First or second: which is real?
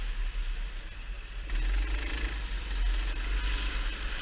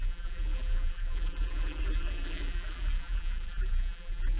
first